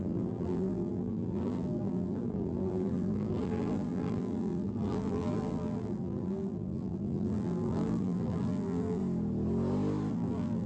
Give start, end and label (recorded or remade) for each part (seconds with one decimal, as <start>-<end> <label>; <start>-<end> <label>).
0.0-9.0 remade; 9.0-10.1 recorded; 10.1-10.7 remade